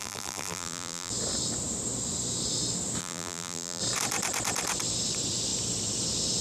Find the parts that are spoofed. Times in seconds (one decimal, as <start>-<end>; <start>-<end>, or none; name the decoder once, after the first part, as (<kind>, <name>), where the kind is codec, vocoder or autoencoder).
0.0-1.1 (vocoder, BigVGAN v2); 3.0-3.8